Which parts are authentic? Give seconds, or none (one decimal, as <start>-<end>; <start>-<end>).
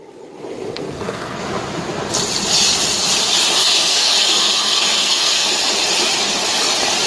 0.0-0.7; 1.4-3.6; 5.6-7.1